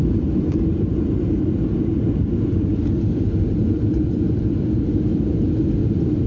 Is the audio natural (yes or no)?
no